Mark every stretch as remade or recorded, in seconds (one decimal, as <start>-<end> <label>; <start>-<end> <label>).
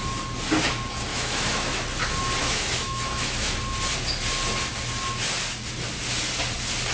0.0-1.1 recorded; 1.1-1.7 remade; 1.7-2.4 recorded; 2.4-3.5 remade; 3.5-6.9 recorded